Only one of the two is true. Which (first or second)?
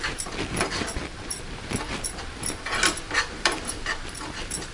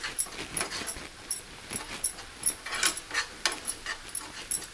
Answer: second